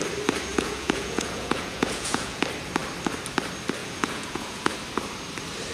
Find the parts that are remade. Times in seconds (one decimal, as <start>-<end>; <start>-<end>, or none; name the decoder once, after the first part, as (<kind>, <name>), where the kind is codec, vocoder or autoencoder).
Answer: 0.5-2.4 (vocoder, Vocos); 3.8-4.7